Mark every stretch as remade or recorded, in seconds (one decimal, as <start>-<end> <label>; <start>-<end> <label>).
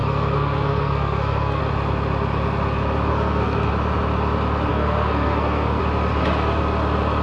0.0-1.6 remade; 1.6-3.1 recorded; 3.1-3.7 remade; 3.7-4.7 recorded; 4.7-5.8 remade; 5.8-7.2 recorded